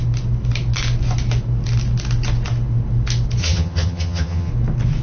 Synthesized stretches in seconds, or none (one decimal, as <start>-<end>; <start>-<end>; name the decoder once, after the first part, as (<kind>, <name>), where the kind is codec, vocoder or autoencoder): 3.4-4.5 (vocoder, HiFi-GAN)